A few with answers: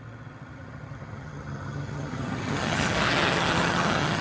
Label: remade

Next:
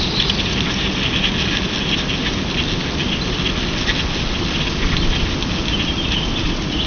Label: recorded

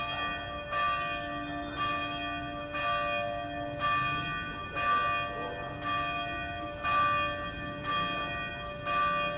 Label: recorded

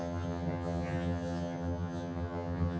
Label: remade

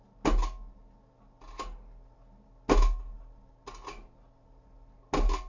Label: recorded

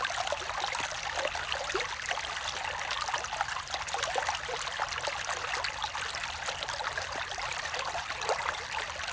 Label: recorded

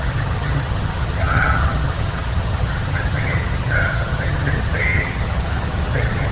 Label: remade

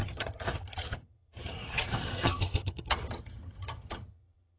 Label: remade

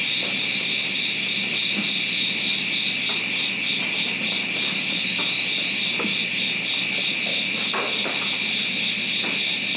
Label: recorded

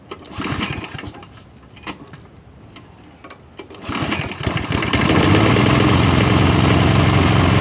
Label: recorded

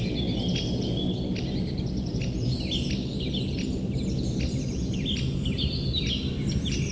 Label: recorded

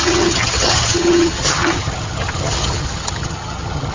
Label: remade